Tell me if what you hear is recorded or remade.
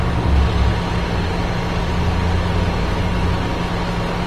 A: recorded